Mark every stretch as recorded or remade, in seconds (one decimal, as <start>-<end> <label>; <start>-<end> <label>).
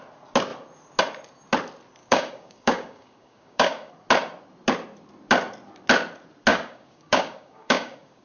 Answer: 0.0-2.0 recorded; 2.0-3.9 remade; 3.9-6.5 recorded; 6.5-8.2 remade